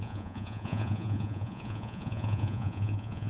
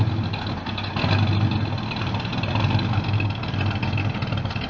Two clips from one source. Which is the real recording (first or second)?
second